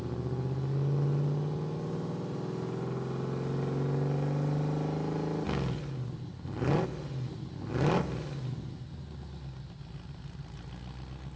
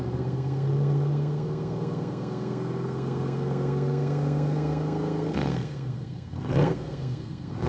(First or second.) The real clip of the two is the first